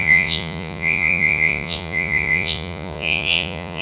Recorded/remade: remade